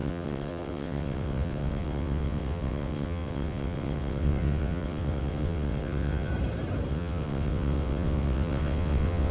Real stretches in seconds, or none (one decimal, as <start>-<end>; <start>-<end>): 6.3-6.9